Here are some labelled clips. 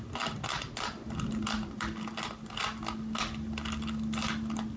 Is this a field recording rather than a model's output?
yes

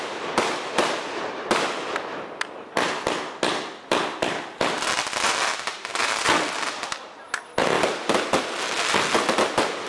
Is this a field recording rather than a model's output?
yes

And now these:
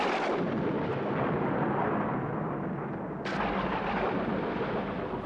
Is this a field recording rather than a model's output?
yes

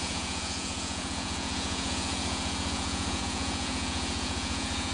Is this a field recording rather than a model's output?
no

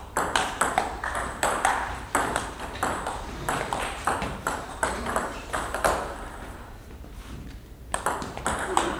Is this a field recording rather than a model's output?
no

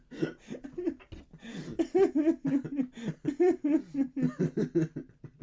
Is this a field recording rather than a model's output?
yes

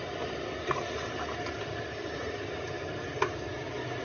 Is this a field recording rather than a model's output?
yes